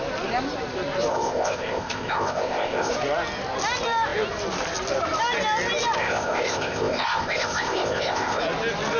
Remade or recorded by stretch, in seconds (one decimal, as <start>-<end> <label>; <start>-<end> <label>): 0.0-1.1 recorded; 1.1-2.9 remade; 2.9-6.0 recorded; 6.0-8.4 remade; 8.4-9.0 recorded